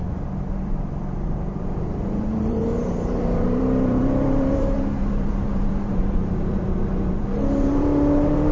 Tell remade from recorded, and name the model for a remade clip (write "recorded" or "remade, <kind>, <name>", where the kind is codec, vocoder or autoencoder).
remade, vocoder, BigVGAN v2